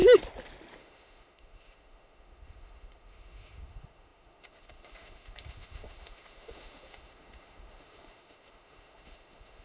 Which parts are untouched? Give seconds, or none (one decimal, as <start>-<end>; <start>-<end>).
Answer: 0.0-0.8